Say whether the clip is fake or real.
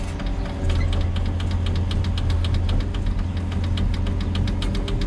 real